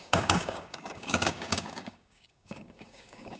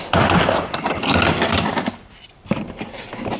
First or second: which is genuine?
second